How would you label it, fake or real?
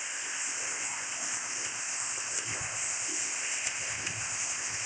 fake